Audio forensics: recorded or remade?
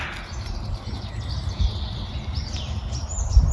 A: recorded